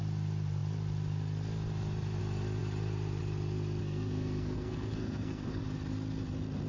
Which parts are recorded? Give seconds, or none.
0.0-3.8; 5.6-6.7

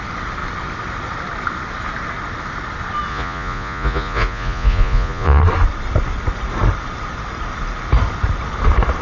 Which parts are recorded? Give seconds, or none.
0.0-3.1; 5.4-9.0

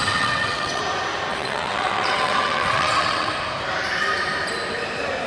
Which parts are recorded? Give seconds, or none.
0.8-1.3; 3.3-5.3